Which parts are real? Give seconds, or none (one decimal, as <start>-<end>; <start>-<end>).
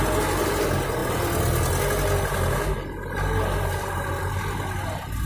0.0-5.3